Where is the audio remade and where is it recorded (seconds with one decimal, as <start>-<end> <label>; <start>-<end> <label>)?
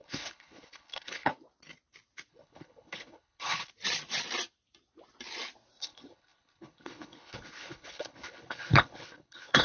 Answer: 0.0-1.3 remade; 1.3-2.3 recorded; 2.3-3.7 remade; 3.7-5.8 recorded; 5.8-9.6 remade